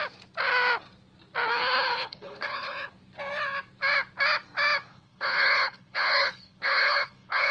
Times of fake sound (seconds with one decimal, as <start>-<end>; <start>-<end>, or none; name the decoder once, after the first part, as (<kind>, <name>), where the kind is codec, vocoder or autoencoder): 1.5-2.9 (codec, HILCodec); 4.9-7.5